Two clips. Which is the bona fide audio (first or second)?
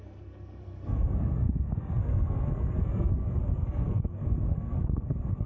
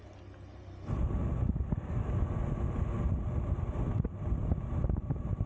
second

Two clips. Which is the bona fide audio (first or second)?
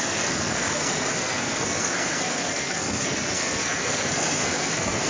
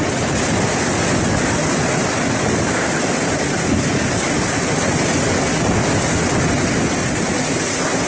second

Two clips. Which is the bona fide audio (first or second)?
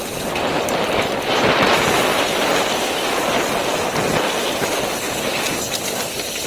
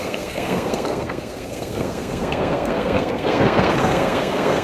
first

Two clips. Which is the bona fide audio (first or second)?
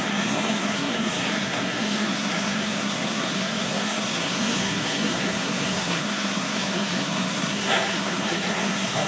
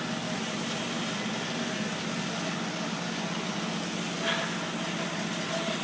second